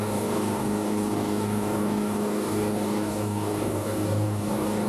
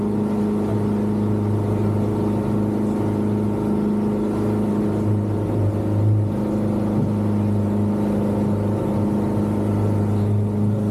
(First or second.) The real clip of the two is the second